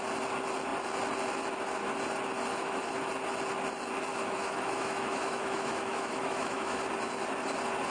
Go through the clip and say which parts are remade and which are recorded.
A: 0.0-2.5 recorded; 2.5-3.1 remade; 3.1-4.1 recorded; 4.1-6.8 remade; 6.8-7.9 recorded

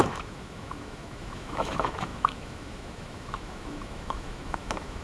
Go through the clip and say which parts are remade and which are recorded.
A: 0.0-5.0 remade

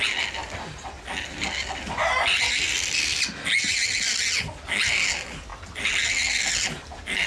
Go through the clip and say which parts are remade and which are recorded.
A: 0.0-7.3 recorded

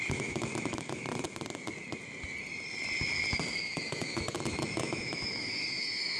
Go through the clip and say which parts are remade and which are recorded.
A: 0.0-1.0 remade; 1.0-3.6 recorded; 3.6-6.2 remade

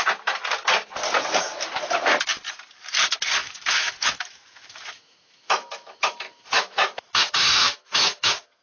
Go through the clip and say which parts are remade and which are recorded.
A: 0.0-3.4 recorded; 3.4-8.6 remade